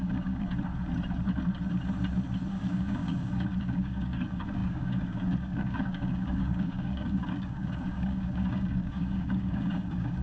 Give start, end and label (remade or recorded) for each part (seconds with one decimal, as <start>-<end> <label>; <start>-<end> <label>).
0.0-0.5 remade; 0.5-2.5 recorded; 2.5-10.2 remade